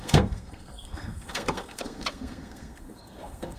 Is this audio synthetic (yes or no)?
yes